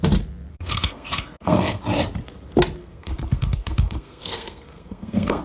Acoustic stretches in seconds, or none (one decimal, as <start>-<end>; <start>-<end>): 0.0-0.5; 1.8-2.8